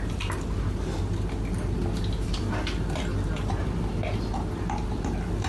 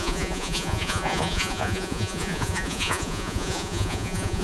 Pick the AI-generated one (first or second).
second